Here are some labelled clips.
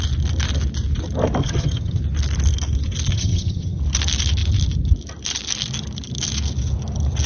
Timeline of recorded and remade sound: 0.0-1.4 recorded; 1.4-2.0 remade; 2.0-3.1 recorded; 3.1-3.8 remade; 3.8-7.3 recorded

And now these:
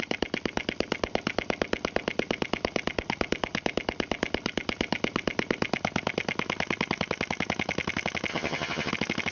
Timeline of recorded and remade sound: 0.0-8.3 recorded; 8.3-8.9 remade; 8.9-9.3 recorded

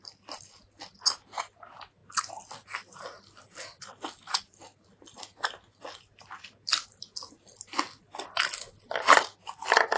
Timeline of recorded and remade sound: 0.0-10.0 recorded

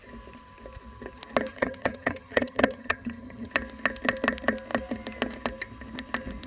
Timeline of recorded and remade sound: 0.0-1.5 recorded; 1.5-3.5 remade; 3.5-6.5 recorded

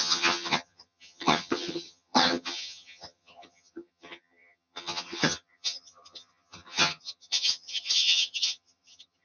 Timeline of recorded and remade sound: 0.0-9.2 remade